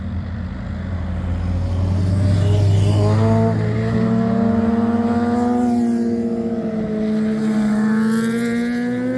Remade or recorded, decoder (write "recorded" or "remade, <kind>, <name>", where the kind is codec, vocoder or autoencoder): recorded